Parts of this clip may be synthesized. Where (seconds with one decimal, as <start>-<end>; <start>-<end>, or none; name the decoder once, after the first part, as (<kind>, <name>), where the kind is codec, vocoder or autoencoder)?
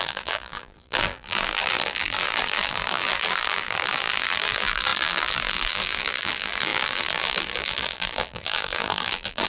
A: 0.0-9.5 (vocoder, BigVGAN v2)